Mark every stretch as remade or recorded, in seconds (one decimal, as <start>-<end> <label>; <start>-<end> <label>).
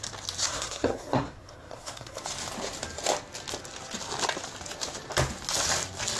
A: 0.0-0.4 recorded; 0.4-2.2 remade; 2.2-6.2 recorded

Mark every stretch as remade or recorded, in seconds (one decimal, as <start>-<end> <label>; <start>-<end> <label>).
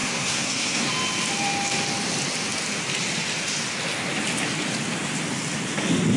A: 0.0-0.9 remade; 0.9-6.2 recorded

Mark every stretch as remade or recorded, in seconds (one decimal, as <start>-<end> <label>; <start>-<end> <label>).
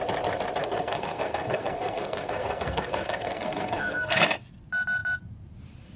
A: 0.0-0.6 recorded; 0.6-4.2 remade; 4.2-6.0 recorded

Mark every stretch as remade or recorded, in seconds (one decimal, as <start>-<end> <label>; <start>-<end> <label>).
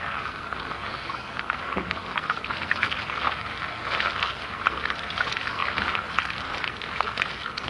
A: 0.0-7.7 remade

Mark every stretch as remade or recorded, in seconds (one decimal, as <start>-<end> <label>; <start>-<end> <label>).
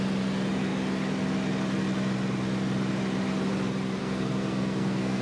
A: 0.0-4.0 recorded; 4.0-5.2 remade